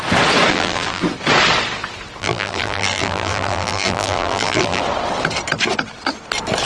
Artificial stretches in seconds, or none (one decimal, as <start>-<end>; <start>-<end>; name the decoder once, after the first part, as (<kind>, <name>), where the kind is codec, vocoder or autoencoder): 0.5-1.0 (vocoder, BigVGAN v2); 2.2-4.8